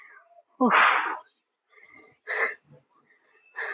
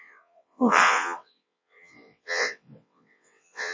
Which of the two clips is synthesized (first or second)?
second